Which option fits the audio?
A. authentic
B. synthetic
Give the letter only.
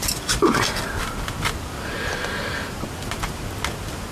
A